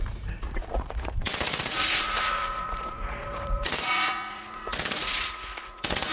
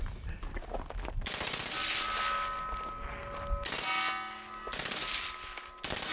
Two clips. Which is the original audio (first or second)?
second